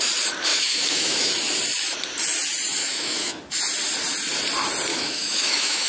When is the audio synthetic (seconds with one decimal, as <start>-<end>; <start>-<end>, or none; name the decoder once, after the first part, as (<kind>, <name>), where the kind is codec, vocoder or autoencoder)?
0.5-1.3 (autoencoder, DAC-VAE); 2.8-3.4; 4.9-5.9